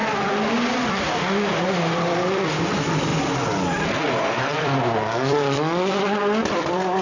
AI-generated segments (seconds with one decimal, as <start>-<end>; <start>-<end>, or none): 0.9-3.1; 4.0-7.0